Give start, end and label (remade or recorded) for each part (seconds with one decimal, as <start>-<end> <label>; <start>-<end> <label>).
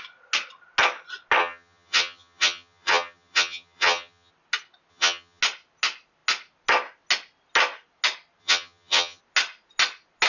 0.0-1.4 recorded; 1.4-4.3 remade; 4.3-4.9 recorded; 4.9-5.4 remade; 5.4-8.4 recorded; 8.4-9.2 remade; 9.2-10.3 recorded